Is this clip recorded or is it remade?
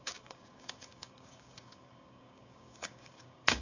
remade